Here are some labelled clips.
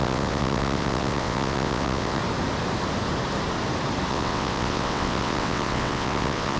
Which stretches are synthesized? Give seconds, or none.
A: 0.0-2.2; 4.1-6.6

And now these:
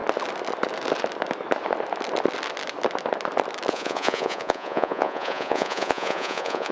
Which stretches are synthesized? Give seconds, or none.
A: 3.7-6.7